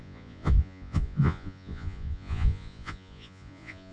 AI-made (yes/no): yes